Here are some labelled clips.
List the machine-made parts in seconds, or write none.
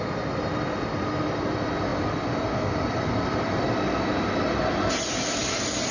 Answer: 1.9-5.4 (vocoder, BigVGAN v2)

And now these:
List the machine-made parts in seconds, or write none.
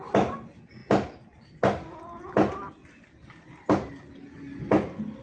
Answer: none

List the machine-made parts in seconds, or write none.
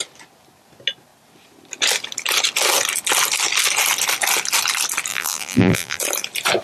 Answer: 5.1-6.0 (vocoder, BigVGAN v2)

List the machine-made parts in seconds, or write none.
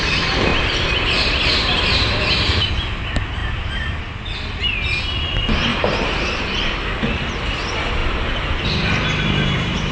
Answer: 0.5-2.7 (vocoder, BigVGAN v2); 5.7-6.7; 8.0-9.9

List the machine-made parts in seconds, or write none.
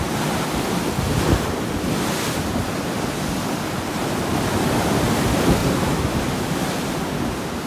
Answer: 5.6-6.5 (vocoder, BigVGAN v2)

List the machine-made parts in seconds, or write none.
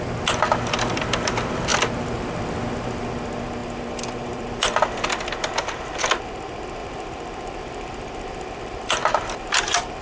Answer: 3.6-4.8 (vocoder, BigVGAN v2); 6.8-9.5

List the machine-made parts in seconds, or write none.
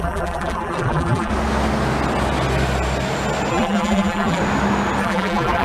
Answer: 0.0-1.3 (vocoder, BigVGAN v2); 3.5-4.4; 5.0-5.6